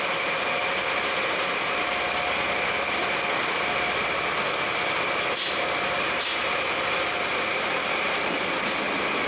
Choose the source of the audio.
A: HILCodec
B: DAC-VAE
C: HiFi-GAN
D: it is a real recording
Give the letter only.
D